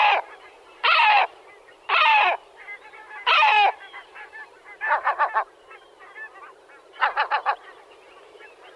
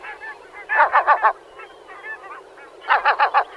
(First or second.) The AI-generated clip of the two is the first